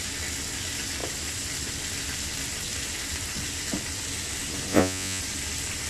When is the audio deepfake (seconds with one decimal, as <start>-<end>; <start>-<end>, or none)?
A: 4.7-5.2